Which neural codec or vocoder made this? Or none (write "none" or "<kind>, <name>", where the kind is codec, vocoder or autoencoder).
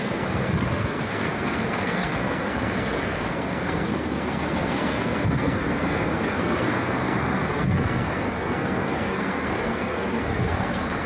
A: codec, SNAC